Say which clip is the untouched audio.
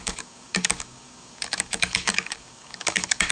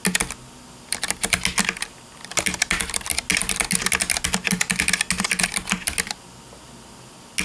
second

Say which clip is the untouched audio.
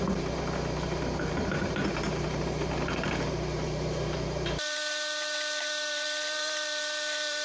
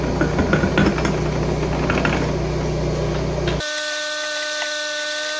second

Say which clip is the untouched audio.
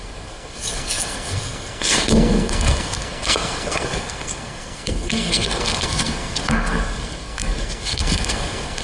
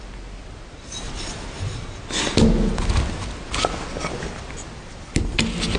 second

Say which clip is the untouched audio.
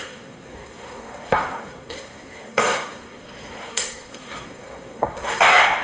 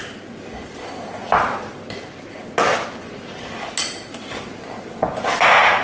second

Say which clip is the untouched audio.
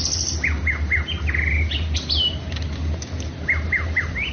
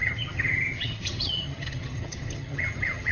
first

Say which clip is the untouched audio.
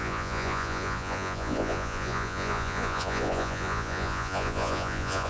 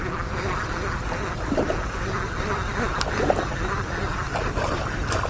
second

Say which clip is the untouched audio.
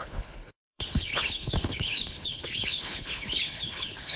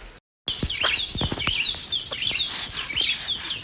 second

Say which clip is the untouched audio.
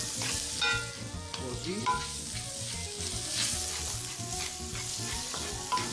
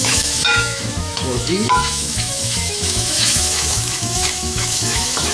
first